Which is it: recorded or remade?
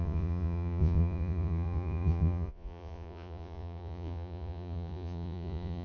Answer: remade